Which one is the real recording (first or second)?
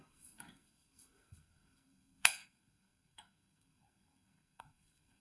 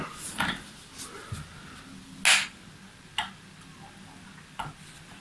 second